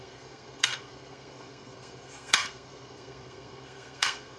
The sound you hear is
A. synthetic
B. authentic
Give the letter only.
A